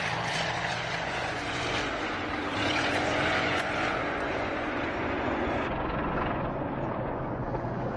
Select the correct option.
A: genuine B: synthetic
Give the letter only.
B